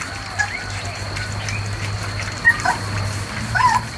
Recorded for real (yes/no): yes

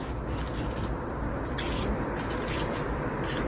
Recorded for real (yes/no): yes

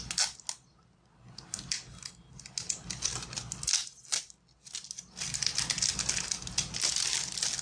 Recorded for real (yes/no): yes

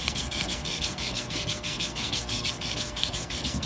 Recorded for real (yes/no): no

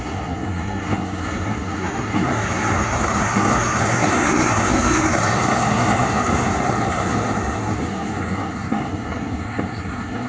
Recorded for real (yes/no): no